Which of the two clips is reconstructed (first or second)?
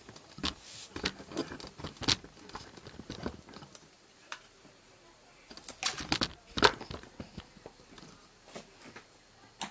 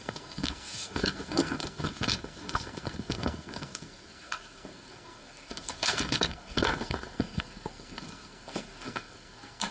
second